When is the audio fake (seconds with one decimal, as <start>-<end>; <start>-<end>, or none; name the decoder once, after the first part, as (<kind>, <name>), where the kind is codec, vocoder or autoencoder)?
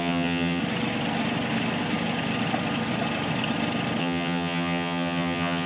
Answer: 0.0-0.6 (vocoder, HiFi-GAN); 4.0-5.7